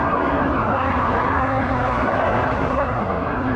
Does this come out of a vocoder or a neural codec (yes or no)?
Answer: yes